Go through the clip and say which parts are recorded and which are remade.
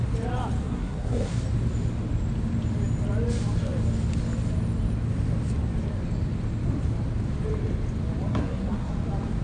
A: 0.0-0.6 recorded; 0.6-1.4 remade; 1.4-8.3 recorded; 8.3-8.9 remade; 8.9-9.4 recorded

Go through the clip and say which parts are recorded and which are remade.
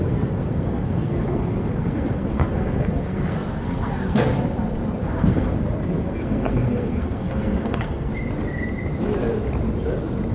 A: 0.0-4.3 remade; 4.3-5.0 recorded; 5.0-8.1 remade; 8.1-10.3 recorded